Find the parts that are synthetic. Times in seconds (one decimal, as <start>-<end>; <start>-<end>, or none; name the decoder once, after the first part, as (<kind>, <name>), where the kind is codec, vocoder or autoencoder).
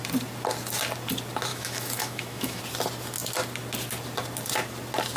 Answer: 1.5-2.6 (autoencoder, DAC-VAE)